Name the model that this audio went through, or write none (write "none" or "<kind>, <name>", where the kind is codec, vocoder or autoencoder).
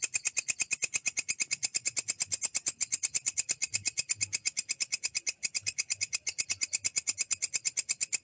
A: none